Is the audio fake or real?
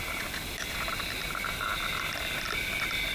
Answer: real